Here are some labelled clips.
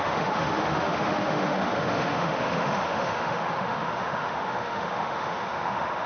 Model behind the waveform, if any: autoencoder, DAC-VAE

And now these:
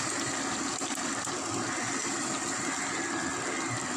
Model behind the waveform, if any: none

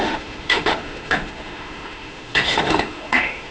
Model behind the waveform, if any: autoencoder, DAC-VAE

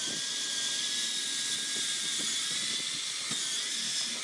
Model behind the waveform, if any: none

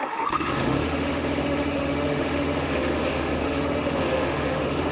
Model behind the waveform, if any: autoencoder, DAC-VAE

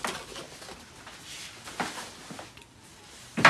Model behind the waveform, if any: none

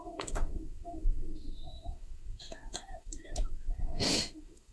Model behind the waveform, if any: autoencoder, DAC-VAE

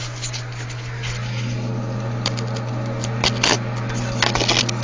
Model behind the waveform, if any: none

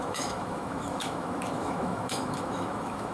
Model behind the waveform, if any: autoencoder, DAC-VAE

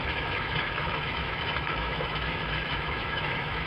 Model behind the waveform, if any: autoencoder, DAC-VAE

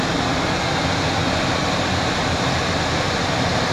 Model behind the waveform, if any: none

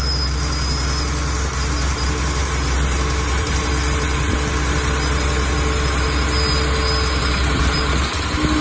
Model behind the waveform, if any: none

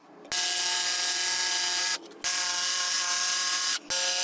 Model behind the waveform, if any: none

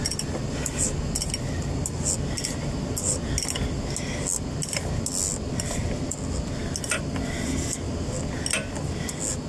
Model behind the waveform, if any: none